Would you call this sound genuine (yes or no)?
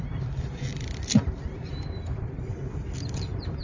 no